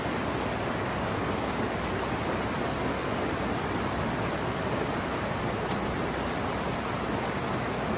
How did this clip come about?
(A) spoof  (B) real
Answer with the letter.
B